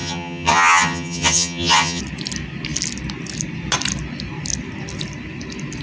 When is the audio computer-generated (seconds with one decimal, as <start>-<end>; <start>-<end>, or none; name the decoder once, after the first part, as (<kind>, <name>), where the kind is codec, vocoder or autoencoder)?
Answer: 0.0-2.0 (vocoder, HiFi-GAN)